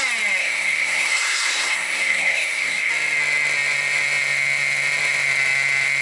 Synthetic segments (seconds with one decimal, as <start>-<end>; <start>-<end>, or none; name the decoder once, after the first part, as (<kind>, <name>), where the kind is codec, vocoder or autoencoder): 0.4-2.9 (codec, SNAC)